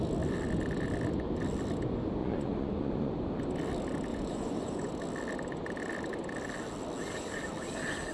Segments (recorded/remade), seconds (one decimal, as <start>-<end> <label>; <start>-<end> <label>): 0.0-2.2 recorded; 2.2-3.1 remade; 3.1-4.1 recorded; 4.1-4.9 remade; 4.9-8.1 recorded